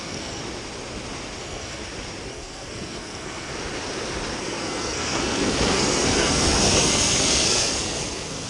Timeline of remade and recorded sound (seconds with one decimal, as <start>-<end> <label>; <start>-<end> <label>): 0.0-0.4 remade; 0.4-1.4 recorded; 1.4-1.8 remade; 1.8-2.3 recorded; 2.3-3.5 remade; 3.5-4.4 recorded; 4.4-8.5 remade